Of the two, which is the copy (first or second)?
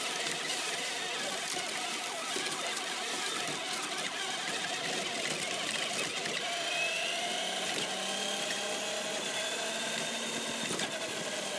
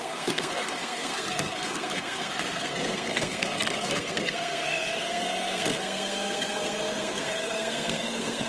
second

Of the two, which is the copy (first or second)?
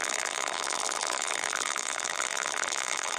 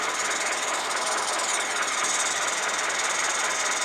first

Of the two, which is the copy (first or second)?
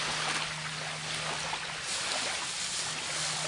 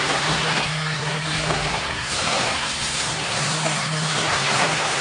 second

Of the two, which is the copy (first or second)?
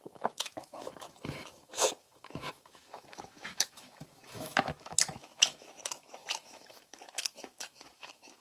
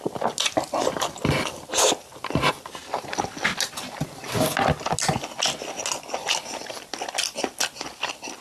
first